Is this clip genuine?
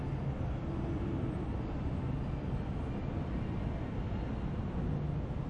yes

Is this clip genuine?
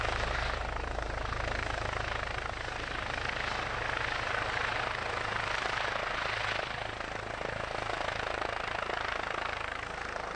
yes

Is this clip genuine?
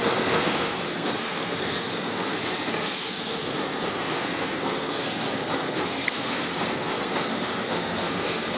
no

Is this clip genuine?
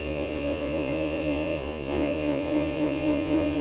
no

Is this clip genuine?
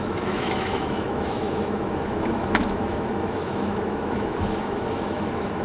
no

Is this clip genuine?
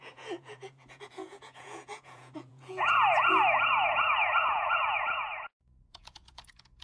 no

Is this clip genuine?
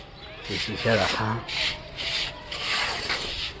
yes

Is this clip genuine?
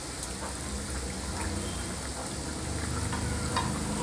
yes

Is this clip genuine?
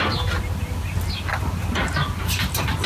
yes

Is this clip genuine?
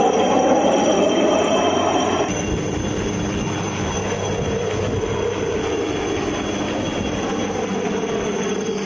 yes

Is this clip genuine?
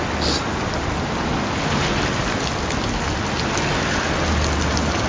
yes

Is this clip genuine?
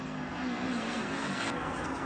no